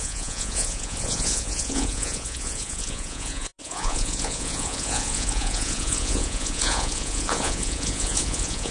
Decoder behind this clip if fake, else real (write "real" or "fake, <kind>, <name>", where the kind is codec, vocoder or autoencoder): fake, vocoder, Vocos